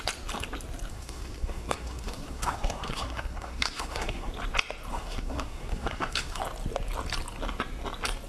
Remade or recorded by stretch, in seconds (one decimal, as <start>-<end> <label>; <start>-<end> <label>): 0.0-0.9 recorded; 0.9-4.3 remade; 4.3-4.9 recorded; 4.9-6.4 remade; 6.4-8.3 recorded